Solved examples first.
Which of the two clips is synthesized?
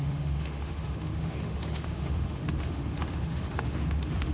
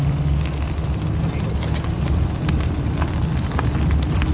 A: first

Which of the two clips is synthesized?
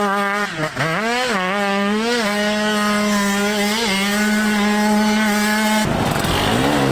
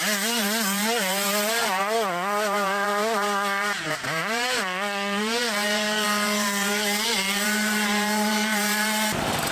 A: second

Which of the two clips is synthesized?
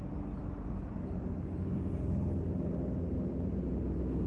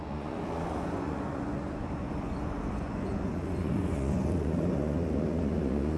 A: second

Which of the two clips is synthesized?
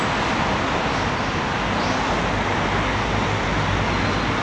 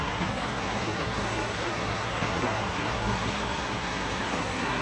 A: second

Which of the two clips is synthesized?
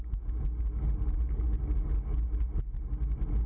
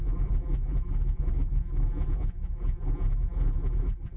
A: second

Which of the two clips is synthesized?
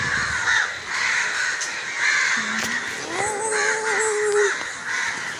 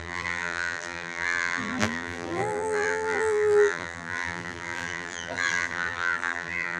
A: second